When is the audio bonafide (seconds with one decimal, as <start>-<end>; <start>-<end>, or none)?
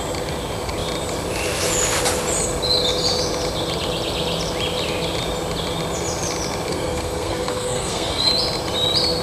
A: 0.0-6.7; 8.3-9.2